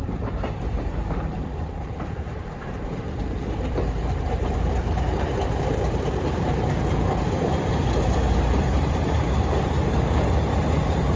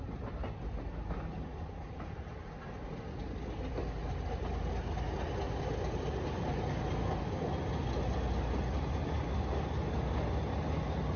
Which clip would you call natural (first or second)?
second